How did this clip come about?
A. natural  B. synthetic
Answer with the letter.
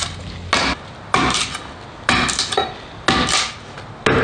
A